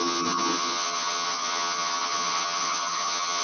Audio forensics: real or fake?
fake